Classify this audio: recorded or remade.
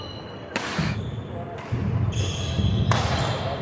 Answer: recorded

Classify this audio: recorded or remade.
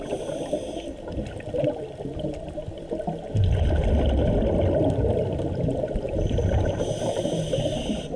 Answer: recorded